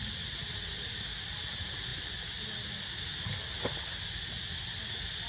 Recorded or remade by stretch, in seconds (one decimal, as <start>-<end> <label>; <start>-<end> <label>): 0.0-5.3 recorded